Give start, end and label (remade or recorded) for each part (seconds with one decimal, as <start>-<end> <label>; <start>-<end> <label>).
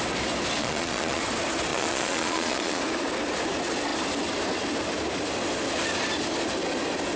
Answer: 0.0-0.6 recorded; 0.6-1.2 remade; 1.2-1.7 recorded; 1.7-2.8 remade; 2.8-7.2 recorded